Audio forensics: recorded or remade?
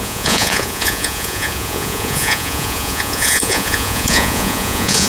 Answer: remade